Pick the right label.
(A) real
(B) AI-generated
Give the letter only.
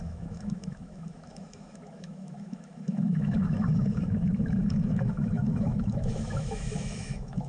B